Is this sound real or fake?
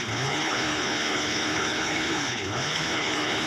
fake